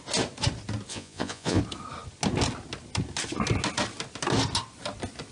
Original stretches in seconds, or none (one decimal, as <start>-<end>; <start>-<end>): 0.0-0.9; 1.6-5.3